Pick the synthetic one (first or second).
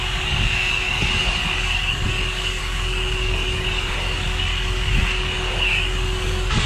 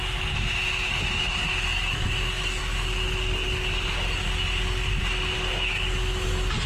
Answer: first